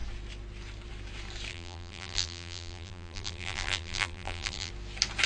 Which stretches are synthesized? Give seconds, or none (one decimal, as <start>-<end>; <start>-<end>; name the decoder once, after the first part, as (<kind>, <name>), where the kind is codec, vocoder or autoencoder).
1.5-4.7 (vocoder, BigVGAN v2)